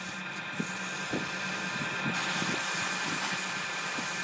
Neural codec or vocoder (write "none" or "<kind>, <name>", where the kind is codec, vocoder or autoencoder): none